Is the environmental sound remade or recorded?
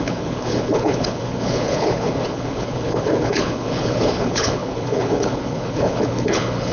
remade